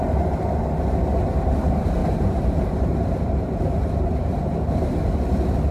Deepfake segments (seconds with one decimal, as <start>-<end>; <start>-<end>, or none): 2.0-4.9